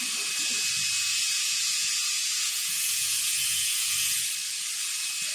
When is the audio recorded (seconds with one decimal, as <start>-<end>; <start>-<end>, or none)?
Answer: 0.0-1.1; 4.3-5.3